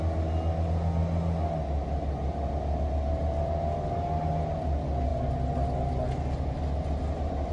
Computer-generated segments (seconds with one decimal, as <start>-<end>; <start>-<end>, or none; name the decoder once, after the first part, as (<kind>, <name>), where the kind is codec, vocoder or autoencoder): none